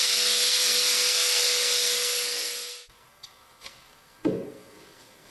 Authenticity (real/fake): fake